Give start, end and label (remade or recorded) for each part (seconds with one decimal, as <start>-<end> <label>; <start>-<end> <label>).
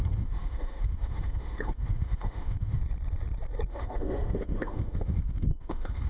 0.0-2.8 remade; 2.8-3.7 recorded; 3.7-6.1 remade